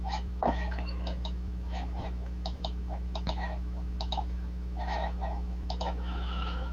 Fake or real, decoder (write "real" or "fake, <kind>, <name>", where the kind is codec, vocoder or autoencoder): fake, autoencoder, DAC-VAE